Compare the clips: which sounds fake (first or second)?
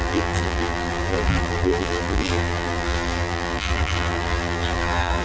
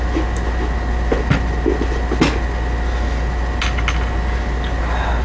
first